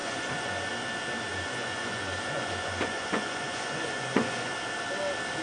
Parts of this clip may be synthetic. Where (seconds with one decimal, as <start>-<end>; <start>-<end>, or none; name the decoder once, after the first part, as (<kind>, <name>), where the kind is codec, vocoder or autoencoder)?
0.0-0.7 (vocoder, Vocos); 1.3-4.5